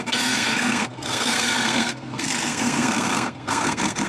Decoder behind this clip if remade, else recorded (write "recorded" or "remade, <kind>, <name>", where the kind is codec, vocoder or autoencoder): remade, codec, SNAC